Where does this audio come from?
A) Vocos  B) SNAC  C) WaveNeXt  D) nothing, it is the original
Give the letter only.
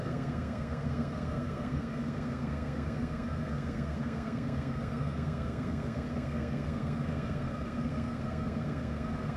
B